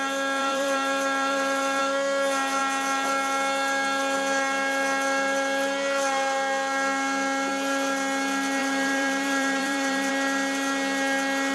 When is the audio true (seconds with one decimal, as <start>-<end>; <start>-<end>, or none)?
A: 0.0-0.4; 1.8-8.6; 10.1-11.5